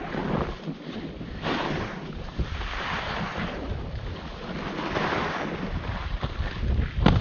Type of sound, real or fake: real